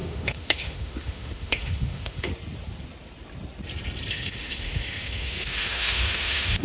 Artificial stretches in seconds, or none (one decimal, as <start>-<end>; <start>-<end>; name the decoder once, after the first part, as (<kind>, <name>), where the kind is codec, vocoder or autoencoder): 0.0-2.3 (autoencoder, DAC-VAE); 4.1-6.6